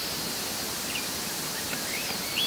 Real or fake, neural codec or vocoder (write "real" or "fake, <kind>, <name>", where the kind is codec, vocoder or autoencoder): real